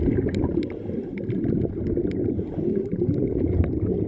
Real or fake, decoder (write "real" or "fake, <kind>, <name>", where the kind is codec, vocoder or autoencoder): real